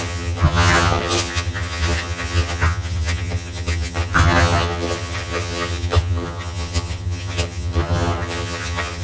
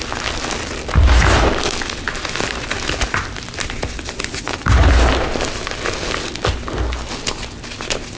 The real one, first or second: second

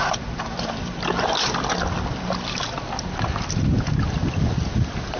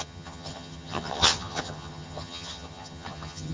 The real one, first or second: first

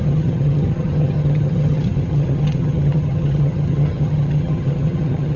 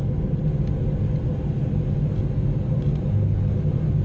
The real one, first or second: second